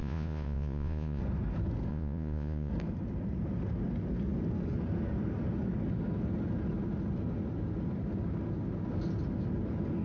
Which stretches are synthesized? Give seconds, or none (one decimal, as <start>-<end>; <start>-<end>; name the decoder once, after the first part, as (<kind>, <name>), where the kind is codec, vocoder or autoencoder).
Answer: 0.0-1.2 (vocoder, Vocos); 1.9-2.7